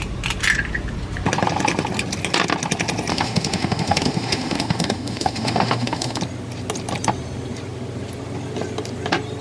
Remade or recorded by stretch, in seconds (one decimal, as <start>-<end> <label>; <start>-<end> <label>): 0.0-3.1 recorded; 3.1-6.2 remade; 6.2-9.4 recorded